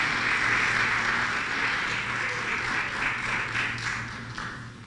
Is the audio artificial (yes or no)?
no